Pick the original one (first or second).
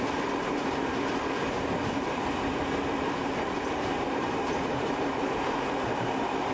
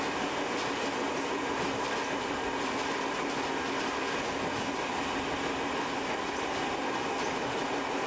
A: second